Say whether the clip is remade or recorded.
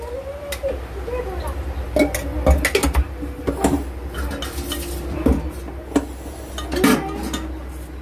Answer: recorded